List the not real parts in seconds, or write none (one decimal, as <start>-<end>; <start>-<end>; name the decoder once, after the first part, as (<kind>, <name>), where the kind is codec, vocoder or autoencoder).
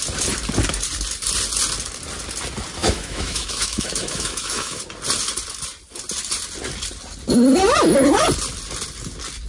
2.8-4.8 (autoencoder, DAC-VAE)